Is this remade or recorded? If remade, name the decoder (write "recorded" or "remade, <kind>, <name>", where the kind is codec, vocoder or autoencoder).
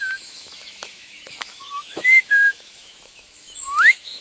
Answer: remade, autoencoder, DAC-VAE